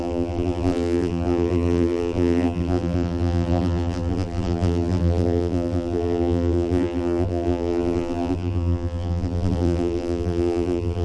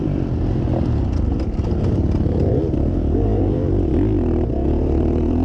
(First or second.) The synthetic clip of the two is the first